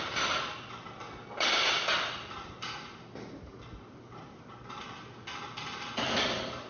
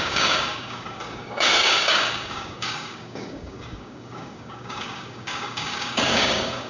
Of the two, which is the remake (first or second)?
second